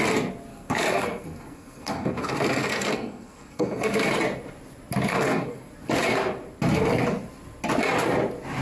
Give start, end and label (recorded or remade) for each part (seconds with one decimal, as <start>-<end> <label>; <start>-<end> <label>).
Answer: 0.0-0.5 recorded; 0.5-4.1 remade; 4.1-5.1 recorded; 5.1-5.7 remade; 5.7-8.6 recorded